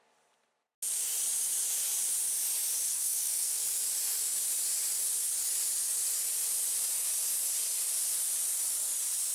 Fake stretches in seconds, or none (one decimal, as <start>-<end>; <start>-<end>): 2.9-3.6